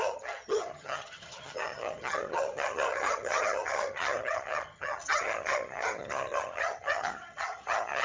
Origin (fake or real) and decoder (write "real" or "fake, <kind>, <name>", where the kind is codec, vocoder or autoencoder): fake, vocoder, HiFi-GAN